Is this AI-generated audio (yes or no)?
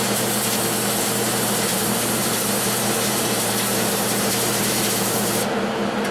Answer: yes